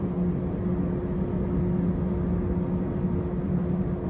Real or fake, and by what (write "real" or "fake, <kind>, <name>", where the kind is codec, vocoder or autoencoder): real